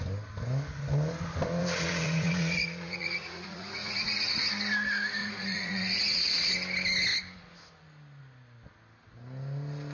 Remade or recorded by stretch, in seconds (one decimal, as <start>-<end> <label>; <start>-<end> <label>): 0.0-1.6 recorded; 1.6-4.5 remade; 4.5-5.2 recorded; 5.2-6.5 remade; 6.5-9.9 recorded